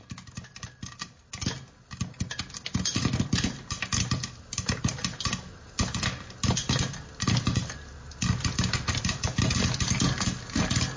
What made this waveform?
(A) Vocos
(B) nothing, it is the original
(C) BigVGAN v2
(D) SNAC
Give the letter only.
B